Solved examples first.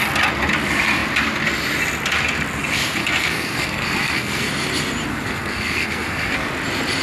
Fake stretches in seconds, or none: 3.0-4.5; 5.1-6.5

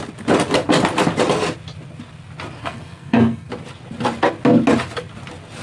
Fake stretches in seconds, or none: 2.6-3.5

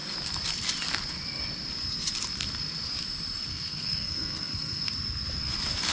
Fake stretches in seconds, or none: 3.5-4.9

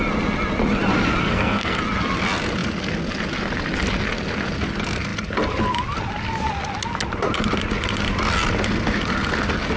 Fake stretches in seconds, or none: 1.2-1.8

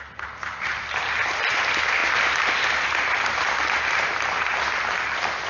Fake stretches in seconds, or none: none

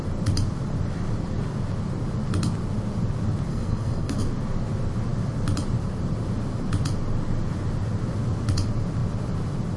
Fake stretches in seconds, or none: 3.5-4.2

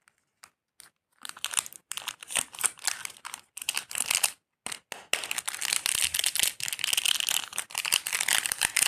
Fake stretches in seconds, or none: none